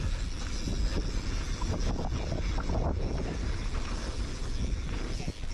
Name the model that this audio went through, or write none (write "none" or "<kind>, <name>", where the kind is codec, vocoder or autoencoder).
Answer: none